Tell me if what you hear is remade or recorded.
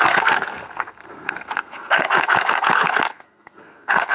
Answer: remade